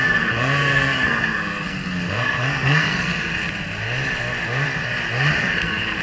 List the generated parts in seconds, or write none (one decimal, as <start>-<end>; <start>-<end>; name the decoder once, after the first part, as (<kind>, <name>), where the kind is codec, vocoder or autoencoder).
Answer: 0.0-3.3 (codec, SNAC); 5.4-6.0

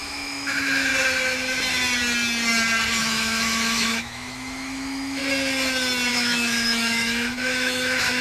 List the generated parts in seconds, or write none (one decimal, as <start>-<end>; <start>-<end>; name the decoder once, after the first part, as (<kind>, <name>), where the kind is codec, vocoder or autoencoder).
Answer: 0.0-0.9 (autoencoder, DAC-VAE); 3.0-5.2; 6.1-8.2

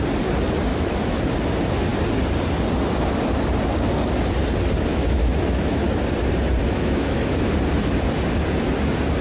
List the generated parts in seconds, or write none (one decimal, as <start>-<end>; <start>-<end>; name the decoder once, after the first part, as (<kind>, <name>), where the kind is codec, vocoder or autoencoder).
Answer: 0.7-1.2 (autoencoder, DAC-VAE); 4.9-5.8; 6.6-7.5

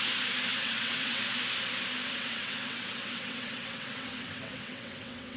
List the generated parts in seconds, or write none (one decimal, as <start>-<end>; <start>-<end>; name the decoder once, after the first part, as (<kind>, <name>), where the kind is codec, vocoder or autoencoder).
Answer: 0.5-1.2 (vocoder, WaveNeXt); 2.1-5.4